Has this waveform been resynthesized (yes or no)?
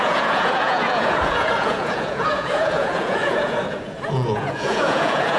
yes